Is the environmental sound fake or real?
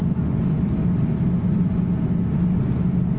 real